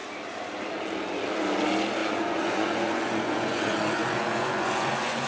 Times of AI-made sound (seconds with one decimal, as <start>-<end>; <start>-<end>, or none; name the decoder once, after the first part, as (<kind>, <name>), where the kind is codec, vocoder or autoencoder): 2.0-5.3 (vocoder, Vocos)